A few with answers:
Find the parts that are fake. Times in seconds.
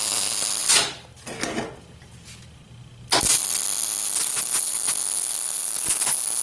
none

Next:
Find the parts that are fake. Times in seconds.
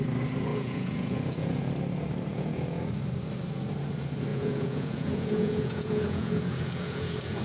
0.5-1.7; 2.3-2.8; 4.3-7.4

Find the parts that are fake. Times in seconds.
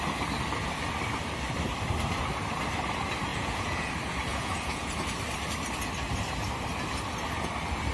3.3-3.9; 4.3-4.9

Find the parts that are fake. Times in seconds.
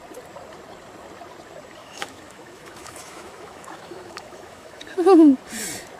1.8-5.4